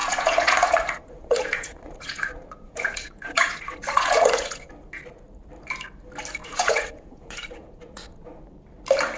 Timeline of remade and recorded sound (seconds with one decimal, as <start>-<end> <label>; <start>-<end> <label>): 0.0-4.7 remade; 4.7-6.4 recorded; 6.4-8.4 remade; 8.4-9.2 recorded